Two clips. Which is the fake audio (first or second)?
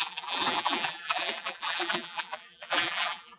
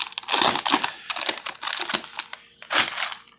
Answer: first